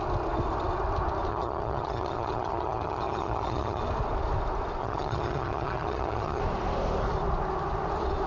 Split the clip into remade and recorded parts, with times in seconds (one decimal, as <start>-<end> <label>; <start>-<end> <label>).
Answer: 0.0-1.3 recorded; 1.3-3.8 remade; 3.8-4.8 recorded; 4.8-6.4 remade; 6.4-8.3 recorded